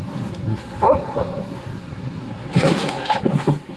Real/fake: fake